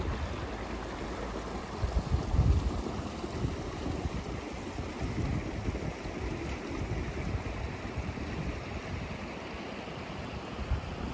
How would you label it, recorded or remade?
recorded